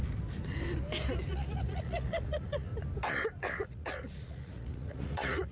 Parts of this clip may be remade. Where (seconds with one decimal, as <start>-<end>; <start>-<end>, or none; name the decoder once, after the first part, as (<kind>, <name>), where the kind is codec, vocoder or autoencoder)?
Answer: 1.3-2.7 (vocoder, Vocos); 3.4-5.5